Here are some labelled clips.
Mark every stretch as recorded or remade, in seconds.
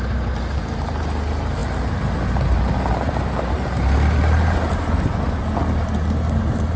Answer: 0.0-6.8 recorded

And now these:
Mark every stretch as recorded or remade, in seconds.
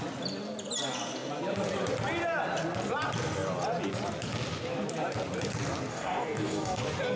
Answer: 0.0-5.9 recorded; 5.9-6.8 remade; 6.8-7.2 recorded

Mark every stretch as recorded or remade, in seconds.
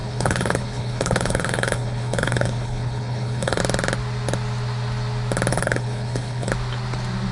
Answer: 0.0-3.6 remade; 3.6-5.5 recorded; 5.5-6.5 remade; 6.5-7.3 recorded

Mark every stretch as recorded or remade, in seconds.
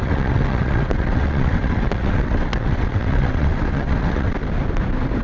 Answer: 0.0-4.3 remade; 4.3-5.2 recorded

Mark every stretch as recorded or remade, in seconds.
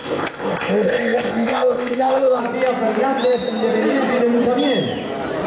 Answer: 0.0-2.4 remade; 2.4-5.5 recorded